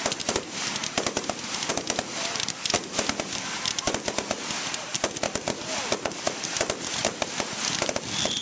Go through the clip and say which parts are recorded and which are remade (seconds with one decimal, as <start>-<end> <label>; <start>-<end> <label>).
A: 0.0-0.8 recorded; 0.8-1.7 remade; 1.7-7.0 recorded; 7.0-7.6 remade; 7.6-8.4 recorded

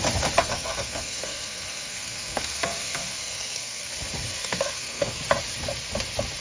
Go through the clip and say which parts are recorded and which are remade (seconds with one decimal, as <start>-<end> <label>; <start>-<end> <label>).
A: 0.0-0.4 recorded; 0.4-3.9 remade; 3.9-4.4 recorded; 4.4-5.2 remade; 5.2-6.4 recorded